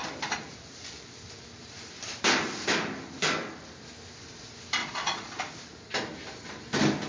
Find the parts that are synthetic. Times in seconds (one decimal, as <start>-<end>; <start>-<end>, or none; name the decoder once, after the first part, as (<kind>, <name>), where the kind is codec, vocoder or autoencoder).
4.8-5.4 (vocoder, Vocos)